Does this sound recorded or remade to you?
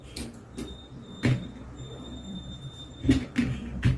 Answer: recorded